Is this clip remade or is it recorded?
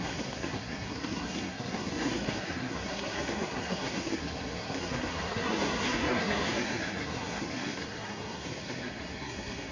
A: remade